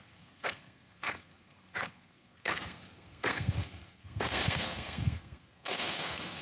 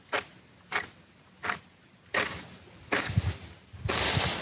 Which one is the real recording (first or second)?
second